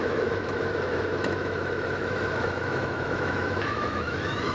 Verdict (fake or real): fake